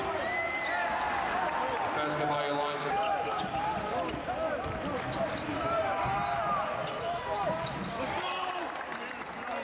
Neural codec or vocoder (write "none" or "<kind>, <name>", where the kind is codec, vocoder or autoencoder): none